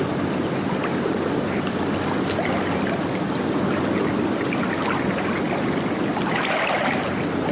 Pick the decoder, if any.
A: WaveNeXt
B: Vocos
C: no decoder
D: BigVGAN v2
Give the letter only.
C